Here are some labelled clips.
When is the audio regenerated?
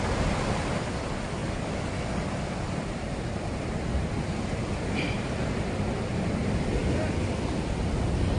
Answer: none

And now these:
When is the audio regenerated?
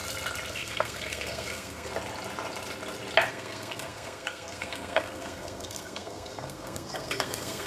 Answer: 0.5-1.9 (codec, SNAC); 3.3-7.7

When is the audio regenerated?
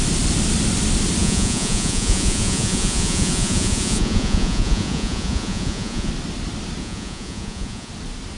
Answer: 1.2-6.1 (vocoder, Vocos); 6.8-7.9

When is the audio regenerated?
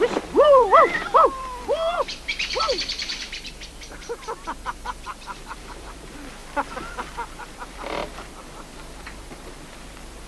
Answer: 0.0-6.4 (vocoder, BigVGAN v2); 7.3-10.3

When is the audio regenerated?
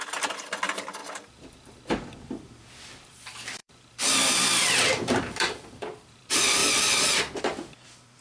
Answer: 0.0-6.6 (vocoder, BigVGAN v2); 7.4-8.2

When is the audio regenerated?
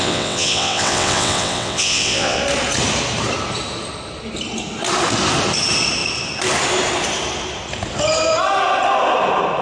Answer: 0.0-2.4 (vocoder, WaveNeXt)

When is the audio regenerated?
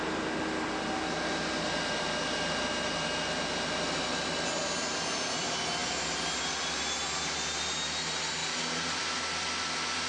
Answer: 8.4-9.0 (vocoder, BigVGAN v2)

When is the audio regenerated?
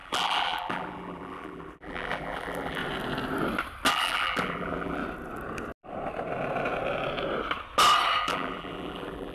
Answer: 0.0-2.8 (vocoder, BigVGAN v2); 3.9-5.0; 8.2-9.3